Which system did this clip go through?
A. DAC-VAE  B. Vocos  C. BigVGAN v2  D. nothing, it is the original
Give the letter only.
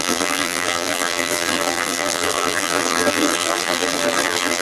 C